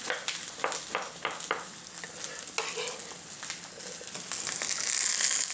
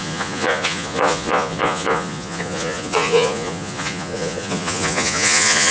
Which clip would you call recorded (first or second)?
first